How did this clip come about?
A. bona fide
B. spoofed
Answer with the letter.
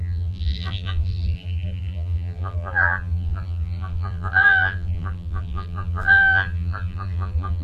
B